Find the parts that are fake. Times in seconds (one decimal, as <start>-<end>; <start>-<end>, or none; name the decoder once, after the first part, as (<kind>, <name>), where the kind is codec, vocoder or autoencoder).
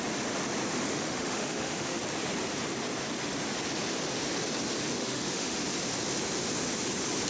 0.7-2.0 (autoencoder, DAC-VAE); 5.0-5.6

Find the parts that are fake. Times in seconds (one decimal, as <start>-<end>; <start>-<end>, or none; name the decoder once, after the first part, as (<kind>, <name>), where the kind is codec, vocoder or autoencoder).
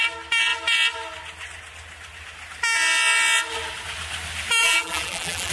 4.6-5.5 (vocoder, BigVGAN v2)